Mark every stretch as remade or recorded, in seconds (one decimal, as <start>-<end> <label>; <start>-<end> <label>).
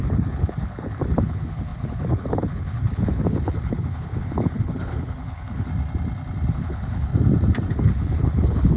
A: 0.0-5.7 remade; 5.7-6.5 recorded; 6.5-7.1 remade; 7.1-7.7 recorded; 7.7-8.8 remade